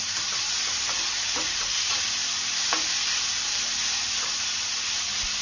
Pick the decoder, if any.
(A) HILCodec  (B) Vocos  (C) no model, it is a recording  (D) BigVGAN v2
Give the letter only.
C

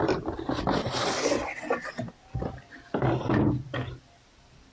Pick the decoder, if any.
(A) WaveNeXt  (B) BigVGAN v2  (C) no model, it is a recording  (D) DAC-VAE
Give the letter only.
C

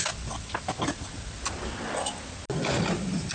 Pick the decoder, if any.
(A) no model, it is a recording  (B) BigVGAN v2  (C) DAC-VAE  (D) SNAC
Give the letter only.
A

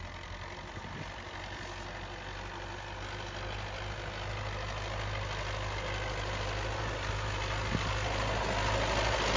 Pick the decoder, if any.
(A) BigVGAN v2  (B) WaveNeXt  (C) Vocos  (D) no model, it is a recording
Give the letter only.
D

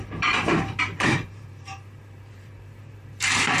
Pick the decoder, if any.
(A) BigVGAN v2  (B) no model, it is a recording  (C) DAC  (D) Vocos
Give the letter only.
A